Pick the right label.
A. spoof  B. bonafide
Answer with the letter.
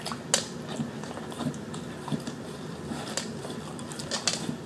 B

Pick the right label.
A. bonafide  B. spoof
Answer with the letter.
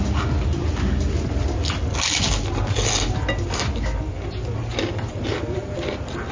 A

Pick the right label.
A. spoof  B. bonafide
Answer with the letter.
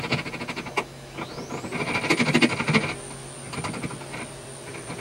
B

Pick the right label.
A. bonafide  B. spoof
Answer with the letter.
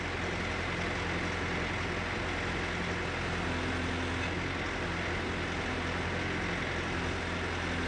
A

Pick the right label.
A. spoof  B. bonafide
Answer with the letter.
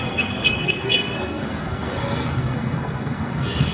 A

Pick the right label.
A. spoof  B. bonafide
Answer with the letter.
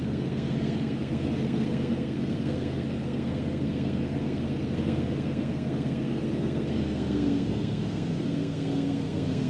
A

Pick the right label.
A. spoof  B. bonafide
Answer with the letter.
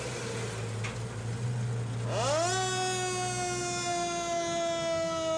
B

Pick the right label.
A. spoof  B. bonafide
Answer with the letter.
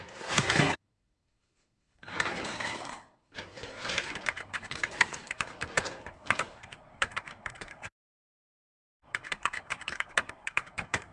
A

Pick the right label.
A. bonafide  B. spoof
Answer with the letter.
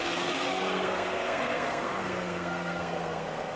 B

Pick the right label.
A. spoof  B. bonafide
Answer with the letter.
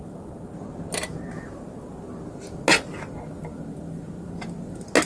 B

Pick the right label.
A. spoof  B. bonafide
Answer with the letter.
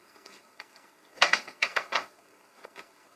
A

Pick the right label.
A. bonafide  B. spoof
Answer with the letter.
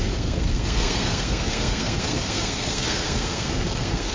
B